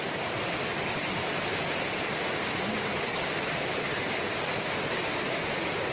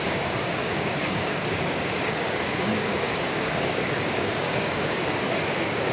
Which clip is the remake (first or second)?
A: second